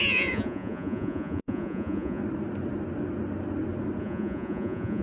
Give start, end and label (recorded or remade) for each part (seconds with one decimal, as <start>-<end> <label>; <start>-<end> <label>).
0.0-2.2 remade; 2.2-4.0 recorded; 4.0-5.0 remade